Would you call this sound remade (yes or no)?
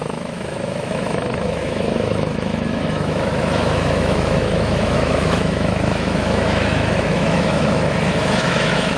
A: yes